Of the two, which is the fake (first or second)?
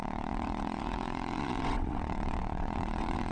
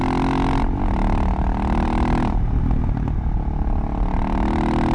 first